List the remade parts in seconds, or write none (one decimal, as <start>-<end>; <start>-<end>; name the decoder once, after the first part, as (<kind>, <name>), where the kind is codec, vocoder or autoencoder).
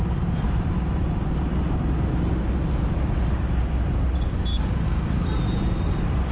4.5-5.1 (codec, DAC)